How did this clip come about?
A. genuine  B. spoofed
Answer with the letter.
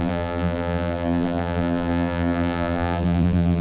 B